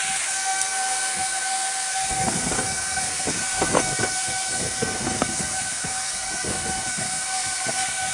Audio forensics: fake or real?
fake